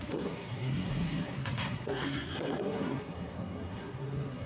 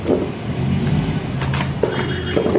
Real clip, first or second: second